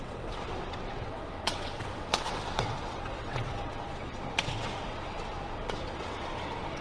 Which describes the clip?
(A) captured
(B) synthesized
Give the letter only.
B